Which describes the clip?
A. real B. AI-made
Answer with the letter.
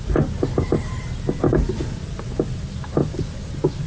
A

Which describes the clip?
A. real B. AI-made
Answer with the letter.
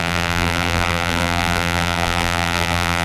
B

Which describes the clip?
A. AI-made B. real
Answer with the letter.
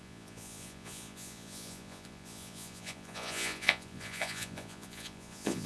A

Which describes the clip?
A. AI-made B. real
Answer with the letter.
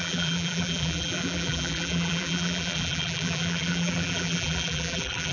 A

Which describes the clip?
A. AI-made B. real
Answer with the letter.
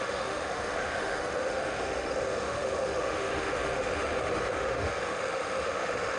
A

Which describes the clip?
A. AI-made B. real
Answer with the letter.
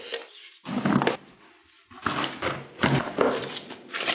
B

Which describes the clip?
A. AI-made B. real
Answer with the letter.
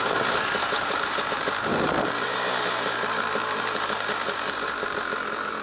A